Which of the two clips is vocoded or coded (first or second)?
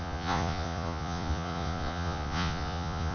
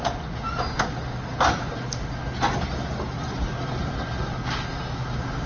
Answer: first